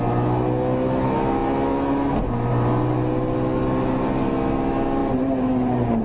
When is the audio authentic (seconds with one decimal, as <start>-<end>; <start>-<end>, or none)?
0.0-6.0